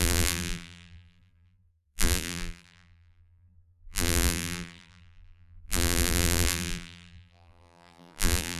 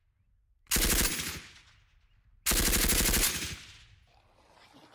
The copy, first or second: first